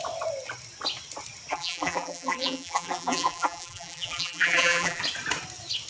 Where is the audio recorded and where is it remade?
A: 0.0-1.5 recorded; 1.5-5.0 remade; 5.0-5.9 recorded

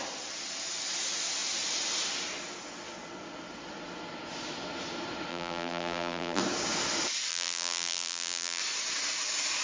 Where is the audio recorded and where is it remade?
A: 0.0-5.3 recorded; 5.3-6.4 remade; 6.4-7.3 recorded; 7.3-8.6 remade; 8.6-9.6 recorded

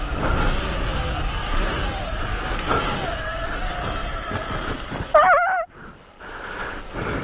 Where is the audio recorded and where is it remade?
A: 0.0-4.0 recorded; 4.0-4.9 remade; 4.9-7.2 recorded

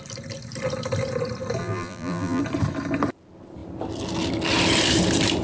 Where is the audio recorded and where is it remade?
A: 0.0-1.6 recorded; 1.6-2.4 remade; 2.4-5.4 recorded

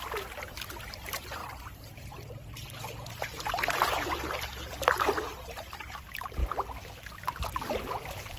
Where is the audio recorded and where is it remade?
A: 0.0-1.4 remade; 1.4-5.1 recorded; 5.1-6.4 remade; 6.4-7.1 recorded; 7.1-8.4 remade

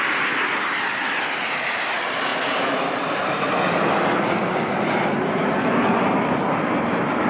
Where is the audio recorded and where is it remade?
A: 0.0-7.3 recorded

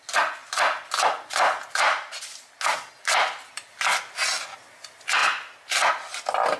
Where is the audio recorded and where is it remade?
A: 0.0-6.6 recorded

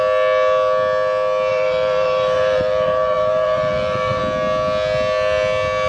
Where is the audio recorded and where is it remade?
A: 0.0-1.5 recorded; 1.5-4.2 remade; 4.2-5.9 recorded